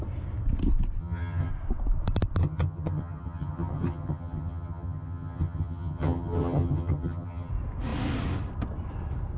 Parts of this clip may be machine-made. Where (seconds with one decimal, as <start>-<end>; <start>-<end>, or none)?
1.0-1.5; 2.4-7.5